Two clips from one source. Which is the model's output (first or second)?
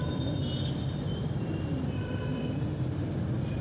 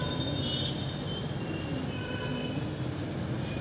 first